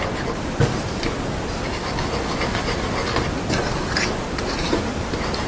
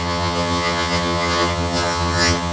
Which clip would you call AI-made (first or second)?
second